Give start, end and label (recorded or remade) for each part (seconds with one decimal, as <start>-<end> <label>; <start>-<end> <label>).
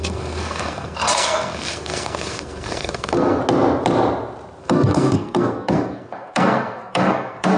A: 0.0-3.4 remade; 3.4-4.6 recorded; 4.6-7.6 remade